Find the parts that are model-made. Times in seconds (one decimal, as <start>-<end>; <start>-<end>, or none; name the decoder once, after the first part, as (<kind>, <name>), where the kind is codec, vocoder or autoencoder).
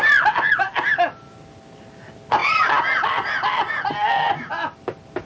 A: none